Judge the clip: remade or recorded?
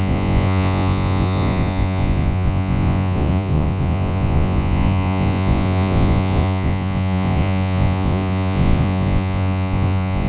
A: remade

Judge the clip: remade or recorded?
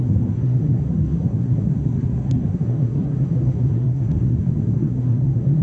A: remade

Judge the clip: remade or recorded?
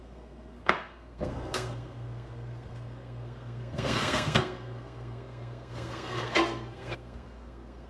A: remade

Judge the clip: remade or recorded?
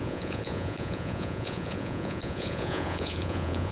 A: remade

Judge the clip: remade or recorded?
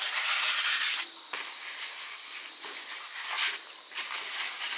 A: recorded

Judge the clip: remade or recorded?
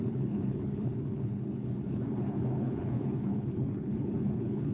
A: remade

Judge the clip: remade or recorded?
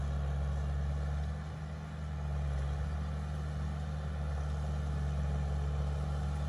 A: recorded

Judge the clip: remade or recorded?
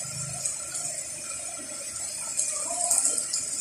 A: recorded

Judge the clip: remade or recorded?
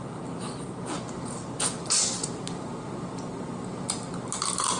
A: recorded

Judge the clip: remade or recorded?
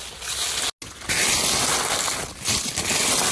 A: recorded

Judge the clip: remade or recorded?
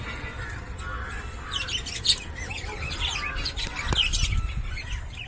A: recorded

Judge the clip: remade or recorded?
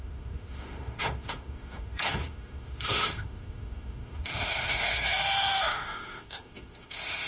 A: remade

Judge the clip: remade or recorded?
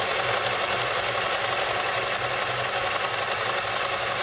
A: recorded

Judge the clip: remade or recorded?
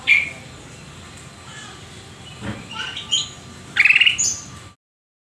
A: recorded